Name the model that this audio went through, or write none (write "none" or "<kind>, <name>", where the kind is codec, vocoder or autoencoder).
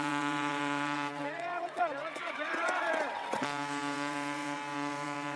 vocoder, WaveNeXt